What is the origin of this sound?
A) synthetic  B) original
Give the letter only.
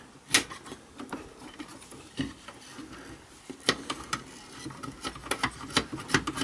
B